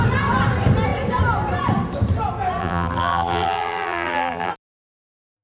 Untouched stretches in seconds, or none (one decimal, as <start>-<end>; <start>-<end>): 0.0-2.6; 4.5-5.4